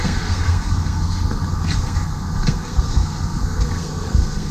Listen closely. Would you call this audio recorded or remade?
remade